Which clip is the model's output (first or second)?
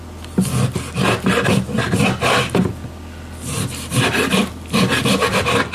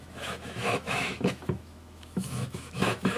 second